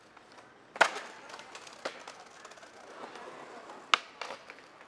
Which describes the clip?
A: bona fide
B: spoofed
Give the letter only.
A